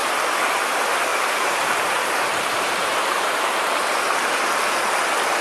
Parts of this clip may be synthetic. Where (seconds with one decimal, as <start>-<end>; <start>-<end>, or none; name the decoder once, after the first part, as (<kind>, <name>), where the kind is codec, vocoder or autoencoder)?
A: 1.1-4.3 (vocoder, BigVGAN v2)